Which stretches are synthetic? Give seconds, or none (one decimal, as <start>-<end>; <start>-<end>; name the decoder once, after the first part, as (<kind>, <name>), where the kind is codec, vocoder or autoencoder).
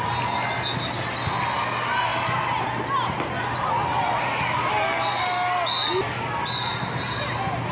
none